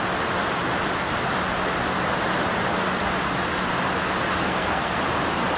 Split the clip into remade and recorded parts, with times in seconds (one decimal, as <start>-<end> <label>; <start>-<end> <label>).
0.0-4.4 recorded; 4.4-5.0 remade; 5.0-5.6 recorded